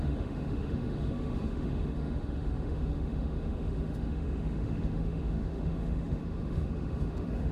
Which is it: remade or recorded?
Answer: remade